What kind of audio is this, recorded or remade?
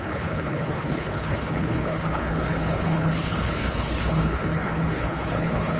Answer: remade